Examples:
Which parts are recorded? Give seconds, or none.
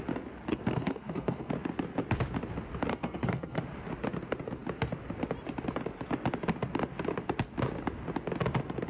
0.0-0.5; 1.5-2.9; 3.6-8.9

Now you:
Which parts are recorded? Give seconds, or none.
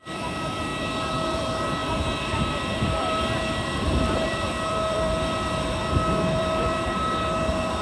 0.7-1.2; 1.8-2.5; 5.8-6.4